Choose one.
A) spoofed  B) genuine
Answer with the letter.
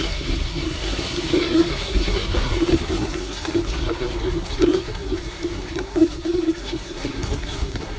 A